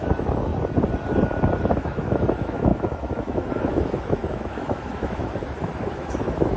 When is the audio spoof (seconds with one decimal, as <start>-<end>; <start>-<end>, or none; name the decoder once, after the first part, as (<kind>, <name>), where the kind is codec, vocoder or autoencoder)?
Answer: 0.0-0.5 (autoencoder, DAC-VAE); 1.6-6.6